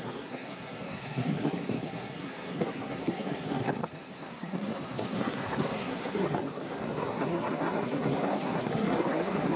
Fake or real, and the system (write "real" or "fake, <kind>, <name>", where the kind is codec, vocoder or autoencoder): fake, codec, SNAC